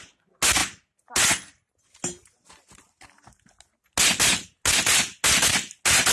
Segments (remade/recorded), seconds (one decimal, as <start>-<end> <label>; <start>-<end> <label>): 0.0-6.1 recorded